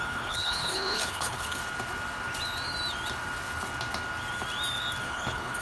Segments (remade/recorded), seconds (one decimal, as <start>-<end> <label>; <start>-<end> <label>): 0.0-1.6 remade; 1.6-5.0 recorded; 5.0-5.6 remade